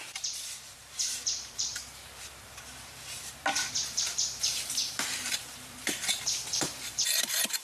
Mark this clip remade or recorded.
remade